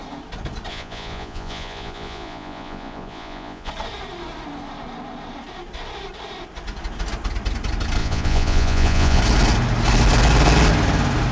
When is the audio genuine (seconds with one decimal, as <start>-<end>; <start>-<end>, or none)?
0.0-0.7; 3.7-8.0; 9.2-11.3